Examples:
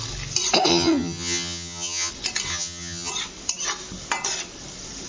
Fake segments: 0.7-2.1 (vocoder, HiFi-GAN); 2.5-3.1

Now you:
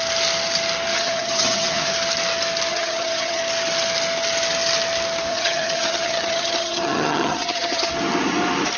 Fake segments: 0.9-1.9 (vocoder, HiFi-GAN); 2.7-3.4; 5.3-7.9